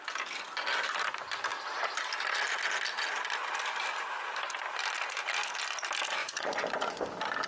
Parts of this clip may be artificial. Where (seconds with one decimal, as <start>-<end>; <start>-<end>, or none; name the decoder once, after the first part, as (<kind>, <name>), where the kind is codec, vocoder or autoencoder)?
6.2-7.0 (vocoder, Vocos)